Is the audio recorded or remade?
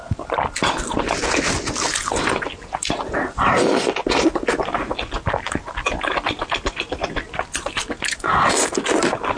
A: recorded